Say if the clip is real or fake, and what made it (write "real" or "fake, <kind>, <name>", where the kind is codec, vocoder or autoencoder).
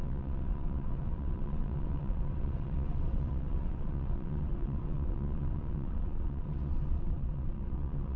fake, vocoder, WaveNeXt